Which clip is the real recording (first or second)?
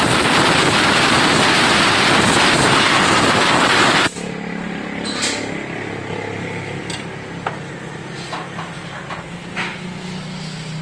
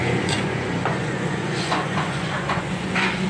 first